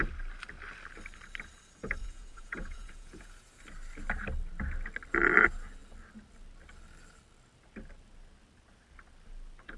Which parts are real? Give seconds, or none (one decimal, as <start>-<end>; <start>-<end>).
0.0-2.0; 3.6-9.8

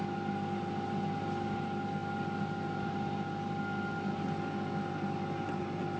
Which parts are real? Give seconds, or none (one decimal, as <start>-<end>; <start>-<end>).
0.0-6.0

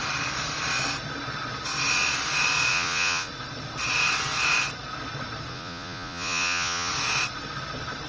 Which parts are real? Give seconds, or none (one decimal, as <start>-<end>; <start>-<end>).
0.0-2.7; 3.3-5.5; 6.9-8.1

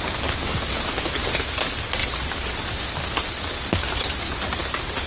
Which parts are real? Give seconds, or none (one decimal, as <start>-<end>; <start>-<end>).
0.0-5.1

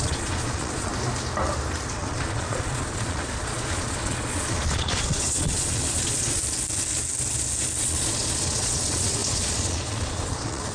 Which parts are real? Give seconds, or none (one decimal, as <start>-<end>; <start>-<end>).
0.9-1.9; 6.4-7.8

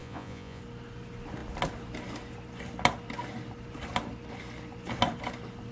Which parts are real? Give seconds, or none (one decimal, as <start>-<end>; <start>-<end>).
0.6-5.7